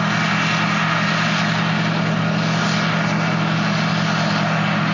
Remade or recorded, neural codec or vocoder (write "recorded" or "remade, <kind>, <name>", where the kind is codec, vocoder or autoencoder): recorded